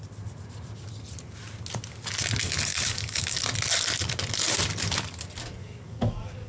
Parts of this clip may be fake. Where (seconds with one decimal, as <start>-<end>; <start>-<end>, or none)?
2.7-3.4; 5.6-6.5